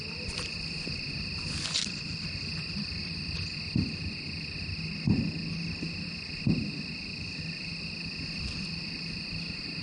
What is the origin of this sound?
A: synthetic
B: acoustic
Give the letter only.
B